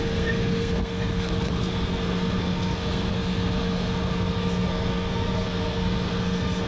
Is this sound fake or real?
fake